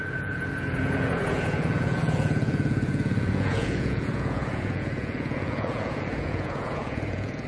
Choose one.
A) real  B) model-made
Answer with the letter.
B